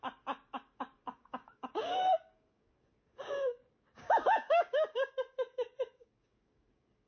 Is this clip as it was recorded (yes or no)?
no